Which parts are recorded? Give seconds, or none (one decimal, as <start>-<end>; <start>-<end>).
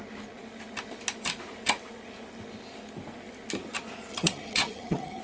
0.0-4.1